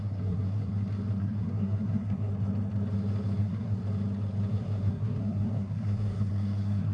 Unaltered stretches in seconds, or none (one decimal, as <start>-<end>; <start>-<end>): 0.7-1.2; 2.3-3.4; 3.8-4.5